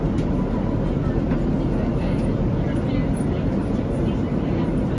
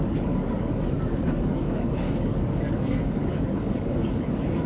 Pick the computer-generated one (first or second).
second